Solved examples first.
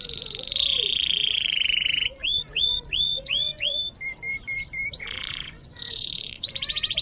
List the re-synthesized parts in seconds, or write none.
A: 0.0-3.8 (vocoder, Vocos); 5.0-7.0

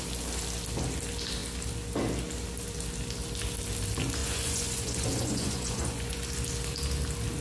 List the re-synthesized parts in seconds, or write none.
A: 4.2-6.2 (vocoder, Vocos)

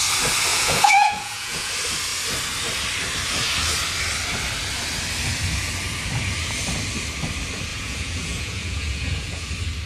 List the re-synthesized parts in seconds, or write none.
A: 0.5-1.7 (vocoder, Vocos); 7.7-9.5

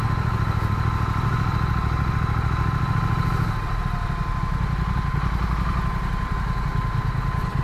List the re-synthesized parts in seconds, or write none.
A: none